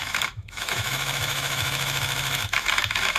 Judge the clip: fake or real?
fake